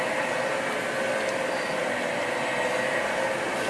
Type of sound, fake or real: real